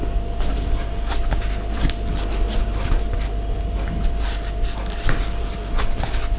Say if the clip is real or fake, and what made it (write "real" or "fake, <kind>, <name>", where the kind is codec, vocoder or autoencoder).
real